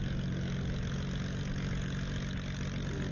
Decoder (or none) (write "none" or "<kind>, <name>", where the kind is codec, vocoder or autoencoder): none